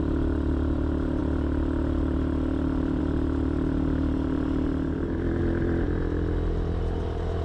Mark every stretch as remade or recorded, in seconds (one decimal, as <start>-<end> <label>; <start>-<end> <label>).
0.0-7.4 recorded